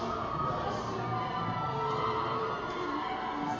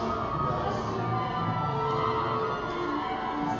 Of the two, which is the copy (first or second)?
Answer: first